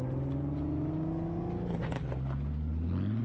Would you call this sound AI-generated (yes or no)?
no